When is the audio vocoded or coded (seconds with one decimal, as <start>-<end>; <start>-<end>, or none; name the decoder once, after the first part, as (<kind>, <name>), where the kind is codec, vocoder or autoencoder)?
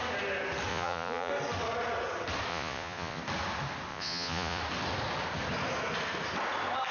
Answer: 0.7-1.3 (vocoder, Vocos); 2.5-3.2; 3.9-4.6